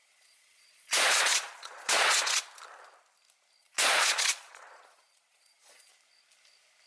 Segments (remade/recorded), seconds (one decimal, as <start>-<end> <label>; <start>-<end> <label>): 0.0-2.4 remade; 2.4-3.6 recorded; 3.6-5.9 remade; 5.9-6.9 recorded